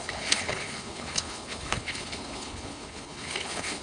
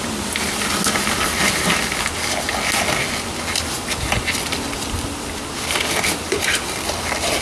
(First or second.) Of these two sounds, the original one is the second